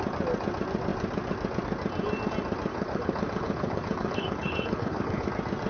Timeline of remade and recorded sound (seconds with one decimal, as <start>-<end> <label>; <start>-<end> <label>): 0.0-2.7 recorded; 2.7-5.3 remade; 5.3-5.7 recorded